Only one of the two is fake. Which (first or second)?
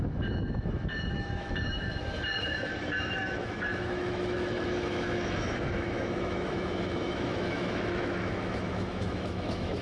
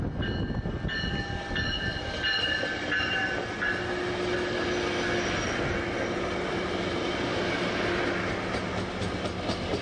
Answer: first